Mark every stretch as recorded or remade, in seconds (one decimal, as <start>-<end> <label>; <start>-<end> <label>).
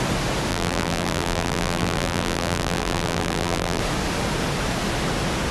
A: 0.0-0.5 recorded; 0.5-3.8 remade; 3.8-5.5 recorded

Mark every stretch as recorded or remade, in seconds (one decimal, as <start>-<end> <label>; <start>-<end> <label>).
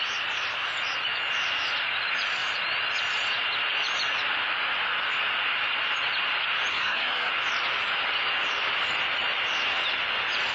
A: 0.0-6.7 recorded; 6.7-7.3 remade; 7.3-10.5 recorded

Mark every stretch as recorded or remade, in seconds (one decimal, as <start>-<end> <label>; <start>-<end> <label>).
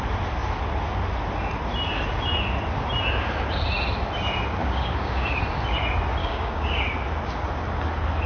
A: 0.0-4.6 recorded; 4.6-5.4 remade; 5.4-6.2 recorded; 6.2-6.8 remade; 6.8-8.3 recorded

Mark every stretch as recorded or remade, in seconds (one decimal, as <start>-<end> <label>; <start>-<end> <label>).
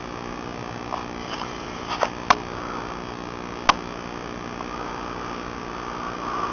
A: 0.0-1.2 recorded; 1.2-1.9 remade; 1.9-6.5 recorded